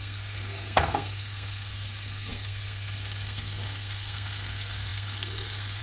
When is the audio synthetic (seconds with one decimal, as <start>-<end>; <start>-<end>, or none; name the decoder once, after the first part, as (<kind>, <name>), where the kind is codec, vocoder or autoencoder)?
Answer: 0.0-5.8 (codec, SNAC)